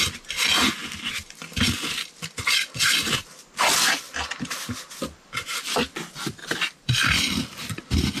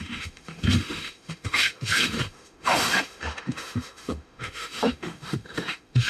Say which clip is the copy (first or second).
second